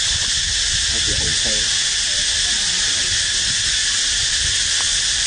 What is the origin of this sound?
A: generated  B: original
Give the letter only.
B